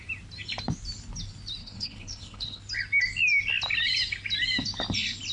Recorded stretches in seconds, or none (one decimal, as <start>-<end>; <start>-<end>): 0.0-1.6; 2.6-5.3